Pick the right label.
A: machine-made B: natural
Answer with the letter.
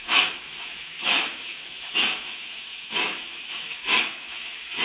A